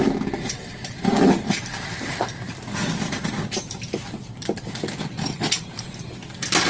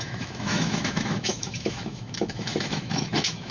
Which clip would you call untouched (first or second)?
first